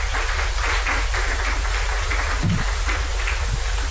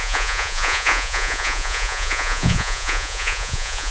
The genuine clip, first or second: first